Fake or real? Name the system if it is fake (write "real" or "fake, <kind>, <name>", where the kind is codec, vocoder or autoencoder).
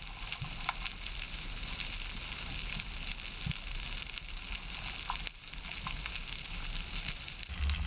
real